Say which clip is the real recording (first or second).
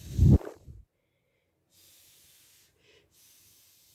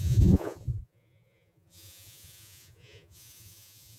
first